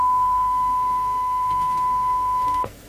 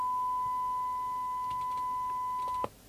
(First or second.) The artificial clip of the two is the first